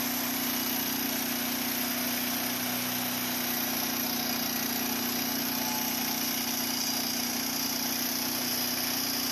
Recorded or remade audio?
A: recorded